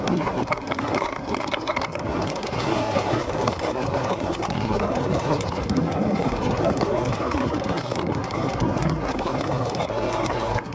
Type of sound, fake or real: fake